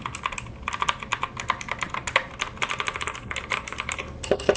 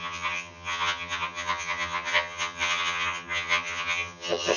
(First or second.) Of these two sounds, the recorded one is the first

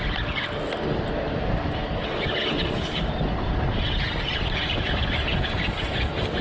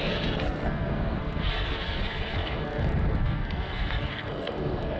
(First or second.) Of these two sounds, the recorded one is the first